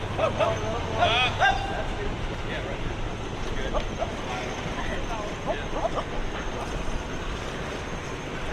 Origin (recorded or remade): recorded